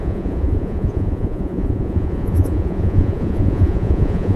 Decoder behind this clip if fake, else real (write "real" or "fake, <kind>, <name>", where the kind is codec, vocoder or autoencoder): fake, vocoder, Vocos